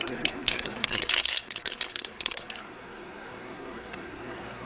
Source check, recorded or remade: remade